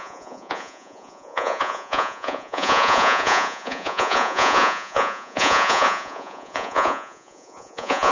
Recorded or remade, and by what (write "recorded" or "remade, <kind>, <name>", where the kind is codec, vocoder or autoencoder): remade, vocoder, Vocos